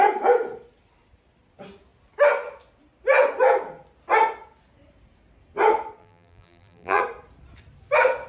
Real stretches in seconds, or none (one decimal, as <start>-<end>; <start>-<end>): 0.0-6.0; 7.0-8.3